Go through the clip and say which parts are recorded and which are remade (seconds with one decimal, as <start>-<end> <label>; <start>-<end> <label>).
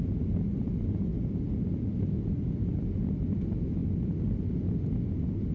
0.0-5.5 recorded